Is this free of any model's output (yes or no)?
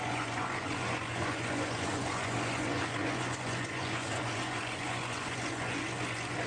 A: no